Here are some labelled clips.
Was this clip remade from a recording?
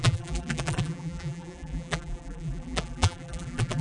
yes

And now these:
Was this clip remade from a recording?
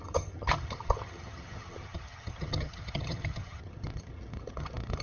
yes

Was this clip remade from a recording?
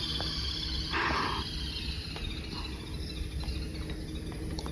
no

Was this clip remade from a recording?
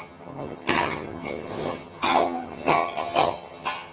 yes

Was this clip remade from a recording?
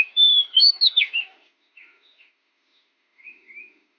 yes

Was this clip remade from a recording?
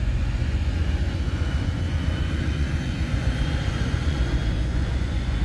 yes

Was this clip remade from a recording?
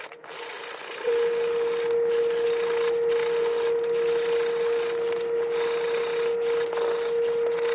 no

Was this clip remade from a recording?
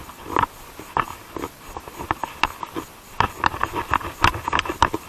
no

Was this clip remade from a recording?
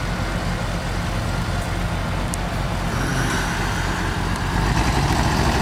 no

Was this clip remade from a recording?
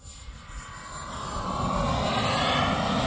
no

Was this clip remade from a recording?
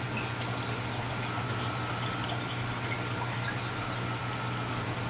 no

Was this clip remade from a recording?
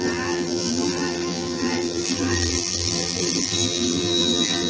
yes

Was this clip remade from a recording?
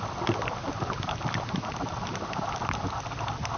no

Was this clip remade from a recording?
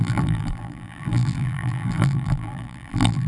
yes